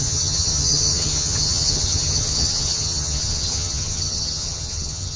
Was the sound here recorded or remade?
remade